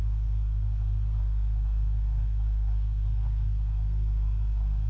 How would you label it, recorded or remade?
remade